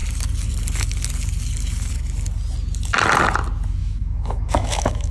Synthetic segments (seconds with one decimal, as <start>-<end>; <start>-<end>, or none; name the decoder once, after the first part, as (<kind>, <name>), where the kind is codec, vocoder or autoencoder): 3.8-5.1 (autoencoder, DAC-VAE)